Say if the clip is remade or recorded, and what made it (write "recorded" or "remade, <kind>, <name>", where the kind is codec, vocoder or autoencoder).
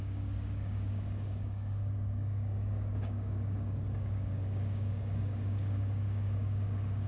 remade, codec, DAC